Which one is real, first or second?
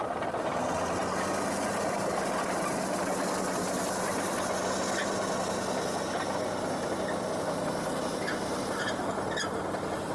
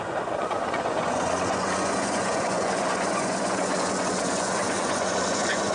first